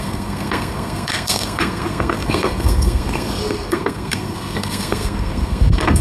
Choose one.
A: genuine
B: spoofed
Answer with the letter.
B